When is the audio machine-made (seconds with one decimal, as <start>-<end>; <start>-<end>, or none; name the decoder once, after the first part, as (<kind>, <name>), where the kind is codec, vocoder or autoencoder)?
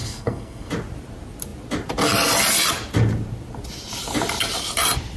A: 0.0-0.7 (codec, SNAC)